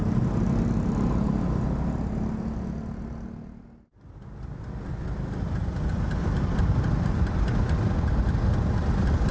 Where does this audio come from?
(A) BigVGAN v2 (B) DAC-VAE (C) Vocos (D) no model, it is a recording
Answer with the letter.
D